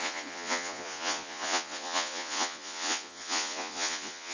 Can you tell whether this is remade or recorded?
remade